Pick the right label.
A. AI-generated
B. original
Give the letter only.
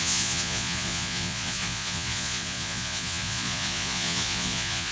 A